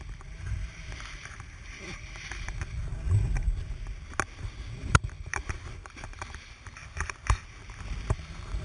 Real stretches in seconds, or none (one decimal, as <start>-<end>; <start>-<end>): 2.9-4.9; 6.8-8.1